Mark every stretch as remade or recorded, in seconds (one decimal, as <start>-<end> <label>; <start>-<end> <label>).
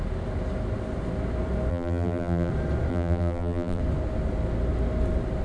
0.0-1.7 recorded; 1.7-2.5 remade; 2.5-2.9 recorded; 2.9-3.8 remade; 3.8-5.4 recorded